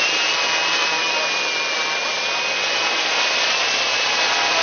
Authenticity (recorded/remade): recorded